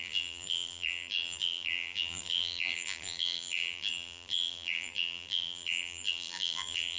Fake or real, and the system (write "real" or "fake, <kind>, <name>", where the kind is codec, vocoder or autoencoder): fake, vocoder, BigVGAN v2